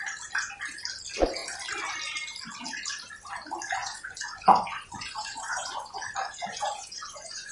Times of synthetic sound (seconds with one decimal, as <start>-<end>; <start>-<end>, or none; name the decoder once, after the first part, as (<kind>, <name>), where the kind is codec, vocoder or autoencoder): 3.8-7.5 (vocoder, Vocos)